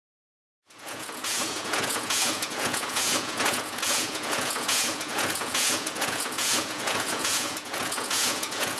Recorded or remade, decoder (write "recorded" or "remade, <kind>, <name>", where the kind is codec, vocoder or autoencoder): remade, vocoder, Vocos